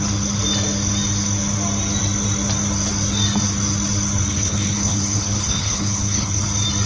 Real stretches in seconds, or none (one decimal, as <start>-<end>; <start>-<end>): 0.0-4.3; 6.4-6.9